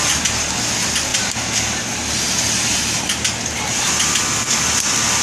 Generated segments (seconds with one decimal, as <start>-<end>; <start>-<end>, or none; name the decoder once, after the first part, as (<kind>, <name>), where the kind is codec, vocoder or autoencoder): none